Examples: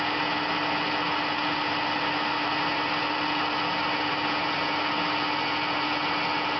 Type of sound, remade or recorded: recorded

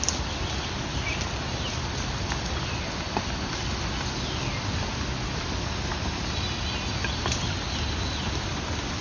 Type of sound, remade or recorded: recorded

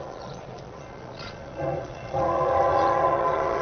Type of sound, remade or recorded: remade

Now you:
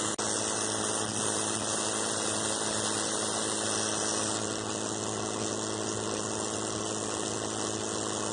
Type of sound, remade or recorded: recorded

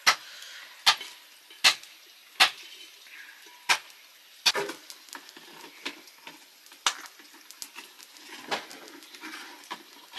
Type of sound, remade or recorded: recorded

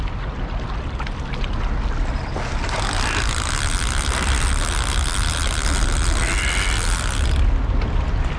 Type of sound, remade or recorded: recorded